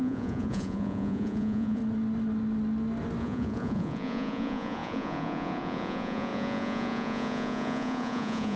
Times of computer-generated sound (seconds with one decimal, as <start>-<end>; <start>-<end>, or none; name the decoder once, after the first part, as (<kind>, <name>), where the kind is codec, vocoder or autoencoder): 0.0-1.8 (vocoder, Vocos); 3.2-8.6